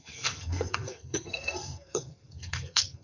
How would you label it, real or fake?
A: fake